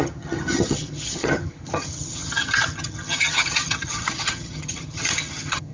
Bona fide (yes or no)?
no